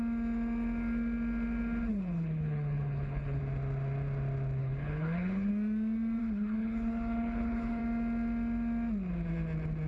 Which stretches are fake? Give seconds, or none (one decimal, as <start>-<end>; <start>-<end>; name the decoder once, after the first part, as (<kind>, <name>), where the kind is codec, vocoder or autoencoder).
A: 1.9-3.4 (codec, HILCodec); 4.6-5.5; 6.2-7.8